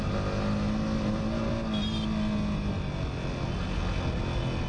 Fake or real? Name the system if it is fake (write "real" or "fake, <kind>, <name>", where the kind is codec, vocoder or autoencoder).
real